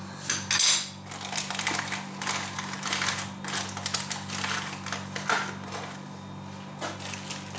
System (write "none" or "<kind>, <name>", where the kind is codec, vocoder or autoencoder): none